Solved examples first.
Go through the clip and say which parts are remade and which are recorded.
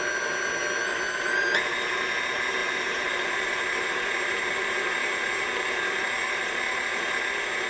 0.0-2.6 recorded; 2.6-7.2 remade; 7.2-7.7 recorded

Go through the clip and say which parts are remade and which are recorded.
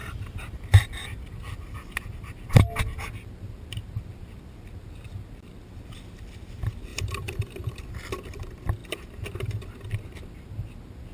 0.0-6.9 recorded; 6.9-7.8 remade; 7.8-11.1 recorded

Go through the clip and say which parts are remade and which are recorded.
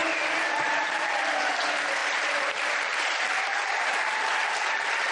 0.0-0.5 remade; 0.5-5.1 recorded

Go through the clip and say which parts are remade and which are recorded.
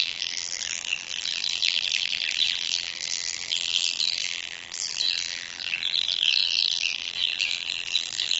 0.0-8.4 remade